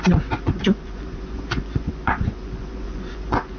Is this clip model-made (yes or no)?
yes